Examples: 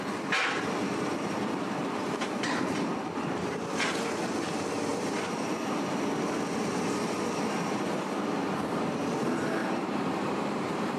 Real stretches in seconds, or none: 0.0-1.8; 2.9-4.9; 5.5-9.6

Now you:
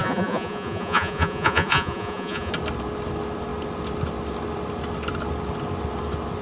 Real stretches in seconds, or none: 2.5-6.4

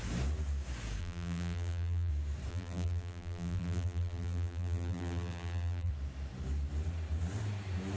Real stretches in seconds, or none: 0.0-1.0; 2.1-2.5; 5.9-8.0